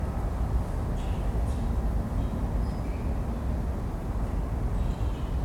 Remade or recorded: recorded